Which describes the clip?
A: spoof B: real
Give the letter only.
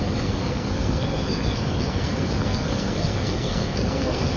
A